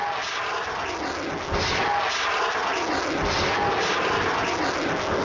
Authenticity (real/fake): real